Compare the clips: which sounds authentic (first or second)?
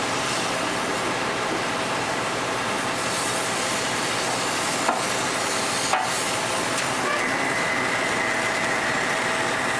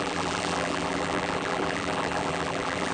first